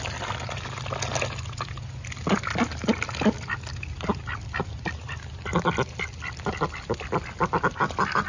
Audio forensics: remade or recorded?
recorded